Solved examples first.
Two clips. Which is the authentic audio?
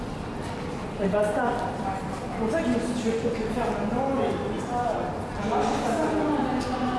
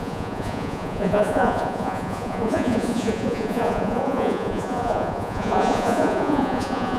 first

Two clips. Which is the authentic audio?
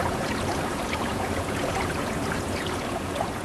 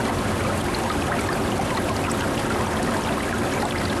second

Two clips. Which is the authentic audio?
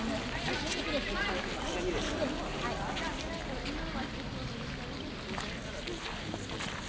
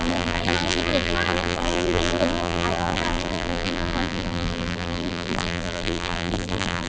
first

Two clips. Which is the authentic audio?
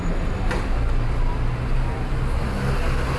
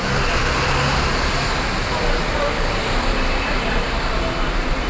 first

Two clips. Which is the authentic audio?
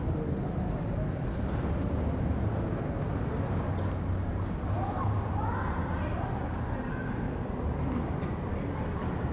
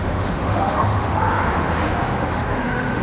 first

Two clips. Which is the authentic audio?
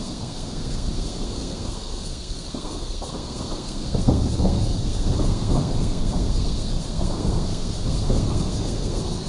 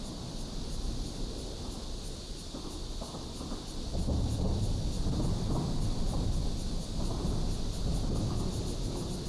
second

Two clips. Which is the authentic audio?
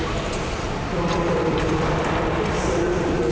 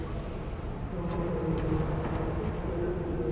second